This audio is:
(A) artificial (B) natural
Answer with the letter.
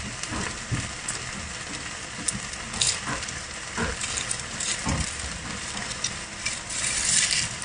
B